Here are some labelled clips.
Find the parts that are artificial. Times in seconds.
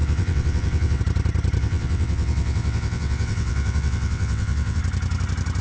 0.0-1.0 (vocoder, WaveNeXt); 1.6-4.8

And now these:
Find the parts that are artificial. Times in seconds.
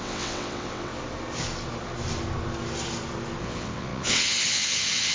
0.0-0.9 (vocoder, WaveNeXt); 3.4-5.1